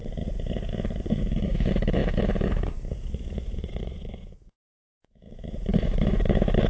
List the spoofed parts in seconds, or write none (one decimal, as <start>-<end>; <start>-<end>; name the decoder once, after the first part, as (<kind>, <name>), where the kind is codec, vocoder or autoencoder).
1.2-6.7 (autoencoder, DAC-VAE)